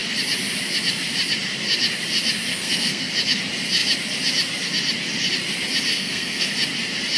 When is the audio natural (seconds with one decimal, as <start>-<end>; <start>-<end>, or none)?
0.0-2.5; 3.1-5.9; 6.5-7.2